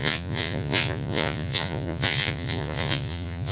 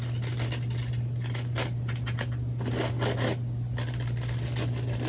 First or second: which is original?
second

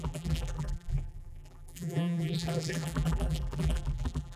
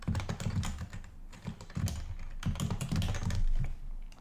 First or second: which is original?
second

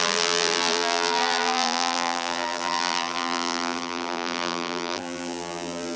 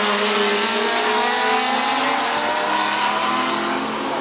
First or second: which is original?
second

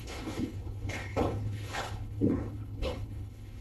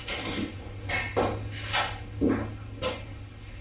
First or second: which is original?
second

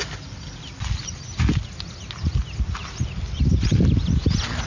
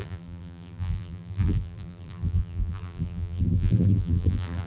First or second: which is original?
first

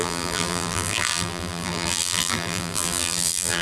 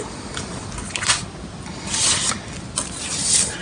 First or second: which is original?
second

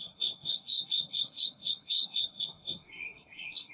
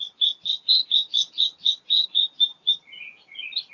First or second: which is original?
second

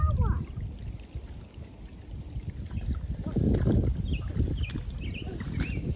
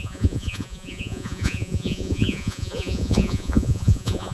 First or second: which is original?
first